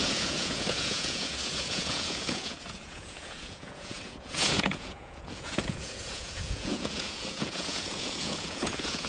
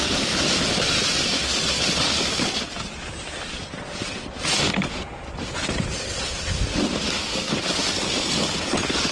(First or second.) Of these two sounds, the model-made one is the first